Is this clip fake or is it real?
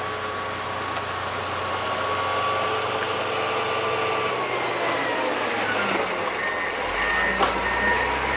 real